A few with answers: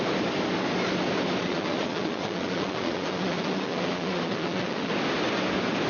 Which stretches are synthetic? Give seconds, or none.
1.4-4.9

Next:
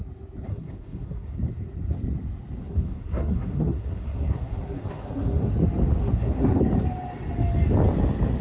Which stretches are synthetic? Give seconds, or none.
0.5-1.4; 2.6-5.5; 6.0-6.6

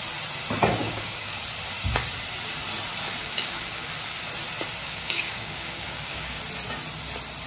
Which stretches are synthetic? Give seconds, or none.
0.8-1.4; 3.2-3.9; 4.8-6.4

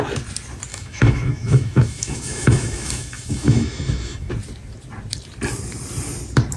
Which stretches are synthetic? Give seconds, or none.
0.7-4.3

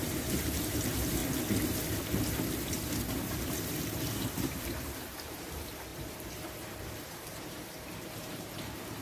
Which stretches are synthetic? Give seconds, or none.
0.0-1.2; 3.1-9.0

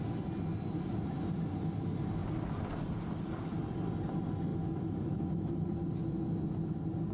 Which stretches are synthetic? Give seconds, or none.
none